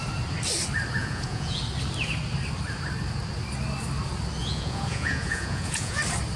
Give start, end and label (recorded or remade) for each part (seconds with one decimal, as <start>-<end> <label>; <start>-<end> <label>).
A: 0.0-1.0 recorded; 1.0-1.6 remade; 1.6-4.4 recorded; 4.4-6.0 remade; 6.0-6.4 recorded